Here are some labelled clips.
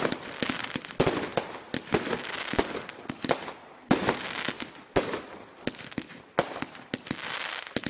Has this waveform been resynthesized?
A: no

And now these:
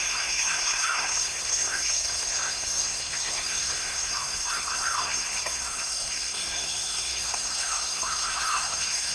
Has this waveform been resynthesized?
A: yes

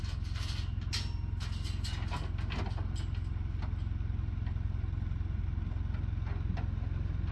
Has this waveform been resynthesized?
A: no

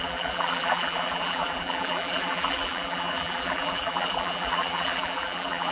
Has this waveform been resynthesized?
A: yes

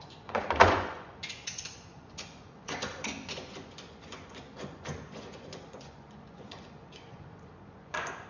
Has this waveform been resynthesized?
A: yes